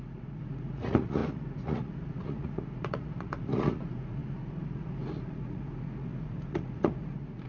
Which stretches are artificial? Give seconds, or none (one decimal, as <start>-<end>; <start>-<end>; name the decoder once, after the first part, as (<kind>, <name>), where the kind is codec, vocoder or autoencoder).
0.0-7.5 (vocoder, Vocos)